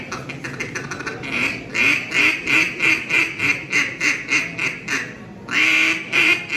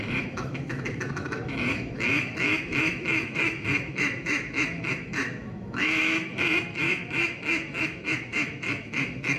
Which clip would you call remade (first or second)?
second